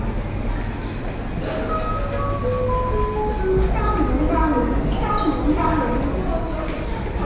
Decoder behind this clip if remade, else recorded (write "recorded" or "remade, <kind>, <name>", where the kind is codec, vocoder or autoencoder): recorded